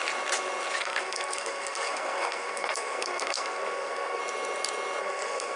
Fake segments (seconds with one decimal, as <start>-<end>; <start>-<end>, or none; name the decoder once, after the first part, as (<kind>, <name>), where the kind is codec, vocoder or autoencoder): 0.8-4.2 (codec, SNAC); 5.0-5.6